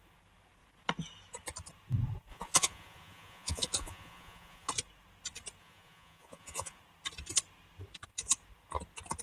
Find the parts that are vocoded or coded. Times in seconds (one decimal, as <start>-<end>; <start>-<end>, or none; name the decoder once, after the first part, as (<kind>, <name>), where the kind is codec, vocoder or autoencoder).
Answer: 2.3-4.7 (vocoder, Vocos); 5.6-6.8